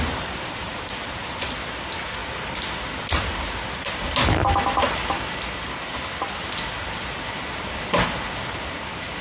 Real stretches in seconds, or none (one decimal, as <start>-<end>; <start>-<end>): 0.0-9.2